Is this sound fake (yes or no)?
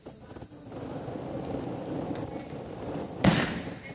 no